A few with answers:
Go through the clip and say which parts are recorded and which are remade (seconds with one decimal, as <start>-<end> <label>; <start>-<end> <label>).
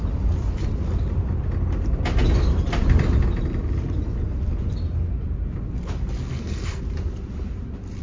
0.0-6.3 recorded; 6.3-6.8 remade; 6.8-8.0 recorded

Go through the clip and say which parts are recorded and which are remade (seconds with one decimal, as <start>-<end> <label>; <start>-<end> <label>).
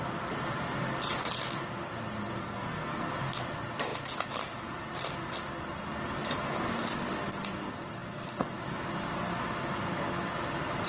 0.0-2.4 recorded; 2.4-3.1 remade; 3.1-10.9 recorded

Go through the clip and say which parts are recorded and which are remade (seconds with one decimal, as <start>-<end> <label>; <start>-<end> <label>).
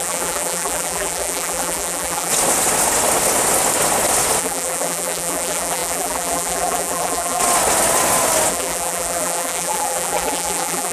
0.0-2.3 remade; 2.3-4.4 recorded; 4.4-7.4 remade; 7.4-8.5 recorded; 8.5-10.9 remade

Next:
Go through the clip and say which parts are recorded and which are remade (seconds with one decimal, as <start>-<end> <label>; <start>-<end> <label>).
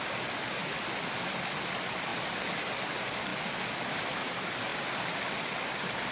0.0-6.1 recorded